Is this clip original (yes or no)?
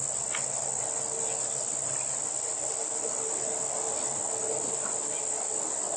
yes